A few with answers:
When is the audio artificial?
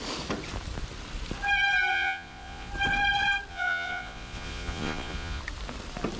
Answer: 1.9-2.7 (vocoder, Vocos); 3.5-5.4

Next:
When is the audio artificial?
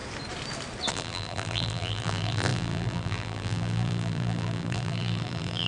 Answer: 0.9-5.7 (vocoder, BigVGAN v2)